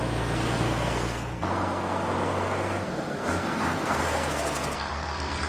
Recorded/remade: remade